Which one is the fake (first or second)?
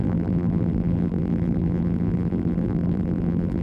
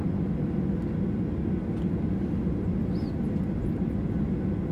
first